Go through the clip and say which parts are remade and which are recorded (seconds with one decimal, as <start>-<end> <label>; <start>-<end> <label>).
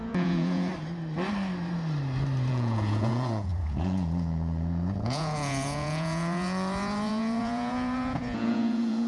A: 0.0-0.7 remade; 0.7-2.5 recorded; 2.5-9.1 remade